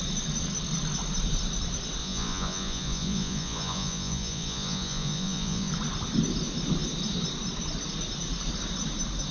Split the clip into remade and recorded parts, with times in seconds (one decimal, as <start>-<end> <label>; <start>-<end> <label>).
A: 0.0-2.0 recorded; 2.0-5.7 remade; 5.7-9.3 recorded